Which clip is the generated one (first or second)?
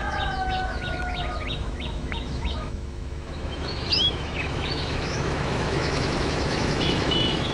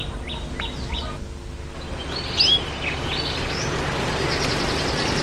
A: first